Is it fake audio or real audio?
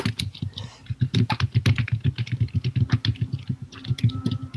real